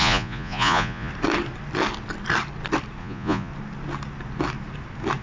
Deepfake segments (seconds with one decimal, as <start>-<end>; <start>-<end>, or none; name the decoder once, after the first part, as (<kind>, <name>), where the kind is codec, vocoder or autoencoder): 0.0-1.1 (vocoder, Vocos); 3.0-3.5